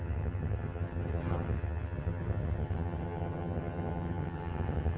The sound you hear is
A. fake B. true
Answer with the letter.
A